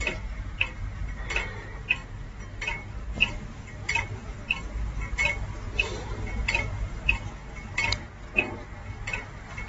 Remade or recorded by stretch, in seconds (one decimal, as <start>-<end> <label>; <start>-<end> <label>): 0.0-9.7 recorded